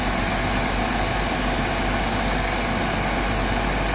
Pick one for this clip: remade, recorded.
recorded